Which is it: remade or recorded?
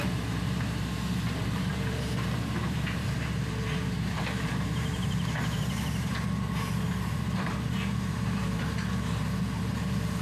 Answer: remade